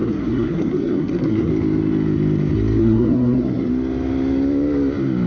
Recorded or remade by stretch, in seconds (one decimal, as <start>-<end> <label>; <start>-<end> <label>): 0.0-1.5 remade; 1.5-2.8 recorded; 2.8-3.7 remade; 3.7-5.3 recorded